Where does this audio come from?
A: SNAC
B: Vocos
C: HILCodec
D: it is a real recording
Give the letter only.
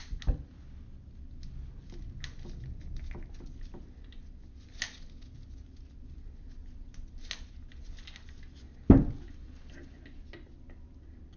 D